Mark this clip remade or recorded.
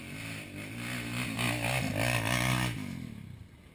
recorded